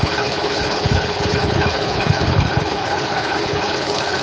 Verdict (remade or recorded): remade